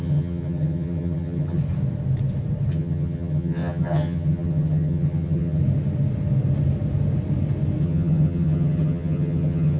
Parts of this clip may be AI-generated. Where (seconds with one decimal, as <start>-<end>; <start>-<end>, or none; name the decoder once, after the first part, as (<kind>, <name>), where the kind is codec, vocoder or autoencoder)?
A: 0.0-1.6 (vocoder, HiFi-GAN); 2.7-5.6; 7.8-9.8